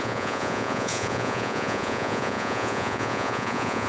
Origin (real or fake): fake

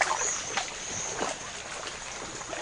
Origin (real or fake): real